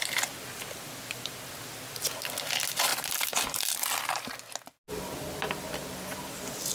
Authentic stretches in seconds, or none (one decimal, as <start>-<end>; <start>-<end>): 0.0-6.7